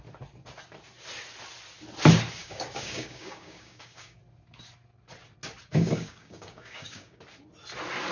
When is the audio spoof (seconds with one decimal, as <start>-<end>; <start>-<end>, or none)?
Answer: 2.4-4.2; 5.7-7.2